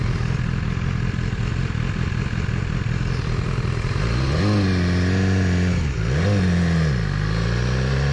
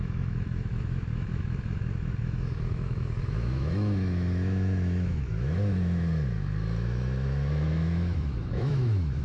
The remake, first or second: second